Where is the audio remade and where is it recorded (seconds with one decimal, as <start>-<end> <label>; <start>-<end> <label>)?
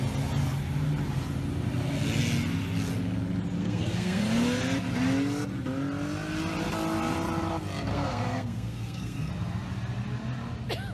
0.0-3.6 recorded; 3.6-4.2 remade; 4.2-7.9 recorded; 7.9-9.3 remade; 9.3-10.9 recorded